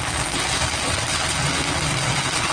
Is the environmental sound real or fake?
real